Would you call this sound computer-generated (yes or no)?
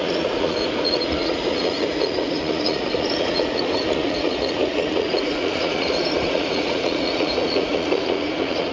yes